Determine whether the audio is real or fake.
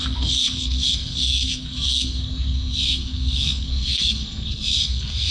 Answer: fake